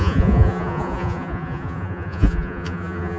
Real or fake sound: fake